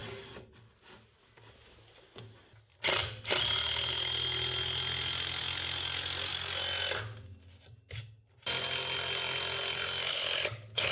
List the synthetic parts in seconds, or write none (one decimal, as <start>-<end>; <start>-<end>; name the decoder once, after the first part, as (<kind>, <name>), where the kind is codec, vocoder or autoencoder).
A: 10.1-10.9 (codec, HILCodec)